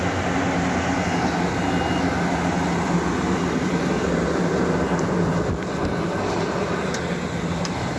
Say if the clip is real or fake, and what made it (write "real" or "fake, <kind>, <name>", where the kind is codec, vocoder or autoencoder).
real